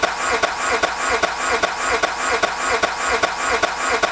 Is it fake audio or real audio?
real